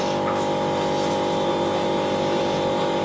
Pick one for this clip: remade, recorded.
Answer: recorded